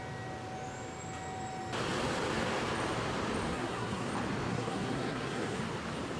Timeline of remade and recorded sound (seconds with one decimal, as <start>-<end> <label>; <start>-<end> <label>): 0.0-3.5 recorded; 3.5-4.1 remade; 4.1-4.5 recorded; 4.5-5.6 remade; 5.6-6.2 recorded